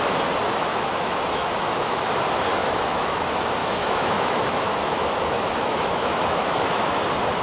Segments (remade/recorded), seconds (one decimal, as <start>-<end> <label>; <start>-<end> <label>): 0.0-0.7 recorded; 0.7-2.2 remade; 2.2-2.6 recorded; 2.6-3.2 remade; 3.2-3.6 recorded; 3.6-7.0 remade; 7.0-7.4 recorded